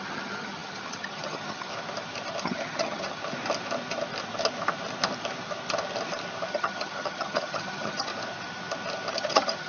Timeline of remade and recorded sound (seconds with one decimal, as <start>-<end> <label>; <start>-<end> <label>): 0.0-1.7 remade; 1.7-2.4 recorded; 2.4-3.2 remade; 3.2-6.5 recorded; 6.5-8.1 remade; 8.1-9.1 recorded; 9.1-9.7 remade